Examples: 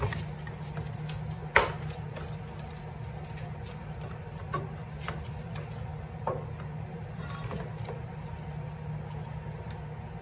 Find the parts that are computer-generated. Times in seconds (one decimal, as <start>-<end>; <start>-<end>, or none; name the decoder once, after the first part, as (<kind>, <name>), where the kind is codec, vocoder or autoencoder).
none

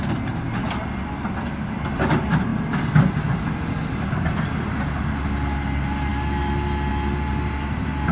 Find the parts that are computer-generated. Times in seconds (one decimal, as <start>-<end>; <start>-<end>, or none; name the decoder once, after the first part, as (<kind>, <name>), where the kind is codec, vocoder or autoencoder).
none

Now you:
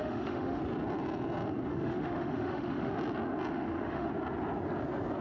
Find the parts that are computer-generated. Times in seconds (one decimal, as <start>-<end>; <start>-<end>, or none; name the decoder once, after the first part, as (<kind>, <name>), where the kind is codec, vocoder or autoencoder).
0.0-0.6 (autoencoder, DAC-VAE); 1.7-2.9; 3.5-4.1